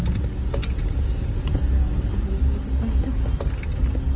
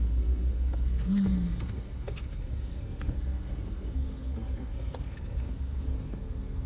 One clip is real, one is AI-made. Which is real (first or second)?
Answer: first